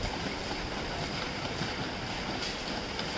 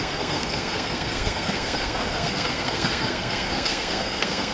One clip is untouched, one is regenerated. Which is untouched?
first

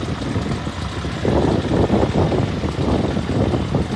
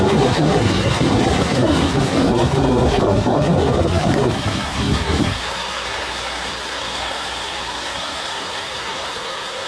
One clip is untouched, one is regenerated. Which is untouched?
first